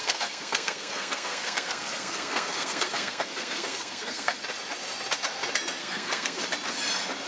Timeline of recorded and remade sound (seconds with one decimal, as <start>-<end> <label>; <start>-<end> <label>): 0.0-4.4 remade; 4.4-5.8 recorded; 5.8-6.4 remade; 6.4-7.3 recorded